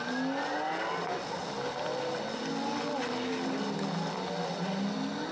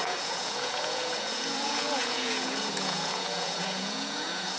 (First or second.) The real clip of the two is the first